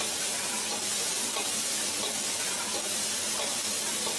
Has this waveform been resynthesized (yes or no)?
no